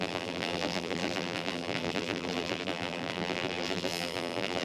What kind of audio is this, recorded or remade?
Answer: remade